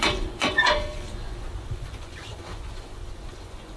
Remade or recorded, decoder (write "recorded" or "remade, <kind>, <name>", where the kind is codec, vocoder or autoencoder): remade, vocoder, Vocos